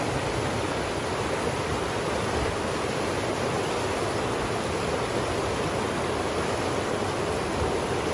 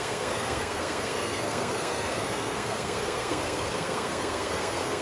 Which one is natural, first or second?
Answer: first